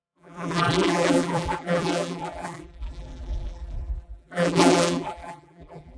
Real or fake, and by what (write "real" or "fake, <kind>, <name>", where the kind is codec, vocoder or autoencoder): fake, vocoder, BigVGAN v2